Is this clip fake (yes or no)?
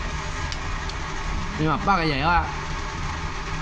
no